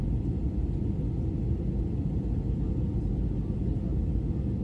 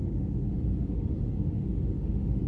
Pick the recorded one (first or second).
first